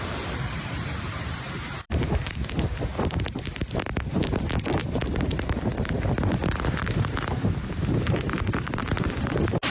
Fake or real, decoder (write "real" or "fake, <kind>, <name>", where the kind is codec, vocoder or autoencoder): fake, vocoder, BigVGAN v2